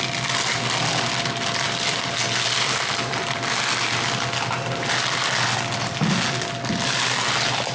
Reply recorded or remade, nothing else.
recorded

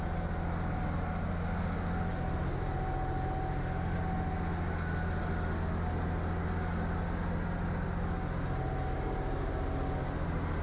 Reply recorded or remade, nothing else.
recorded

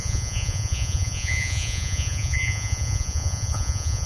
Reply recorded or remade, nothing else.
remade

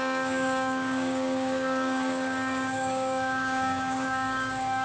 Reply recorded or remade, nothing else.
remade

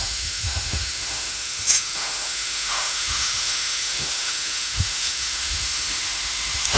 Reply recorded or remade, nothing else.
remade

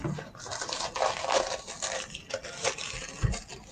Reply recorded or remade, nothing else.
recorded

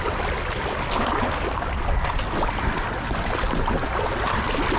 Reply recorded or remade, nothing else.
recorded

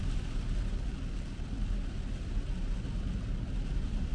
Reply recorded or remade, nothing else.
recorded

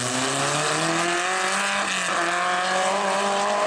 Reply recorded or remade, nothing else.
recorded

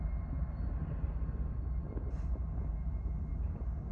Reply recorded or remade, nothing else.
remade